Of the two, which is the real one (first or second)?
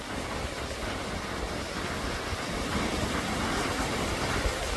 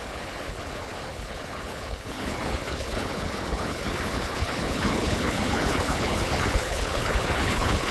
first